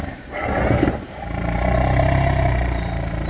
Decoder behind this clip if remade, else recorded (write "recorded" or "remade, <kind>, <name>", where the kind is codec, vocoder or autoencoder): remade, vocoder, BigVGAN v2